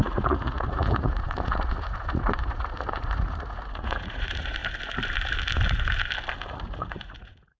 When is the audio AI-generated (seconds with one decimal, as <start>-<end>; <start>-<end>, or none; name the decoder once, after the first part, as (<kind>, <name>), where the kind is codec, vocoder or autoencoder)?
0.0-4.6 (vocoder, Vocos); 6.5-7.6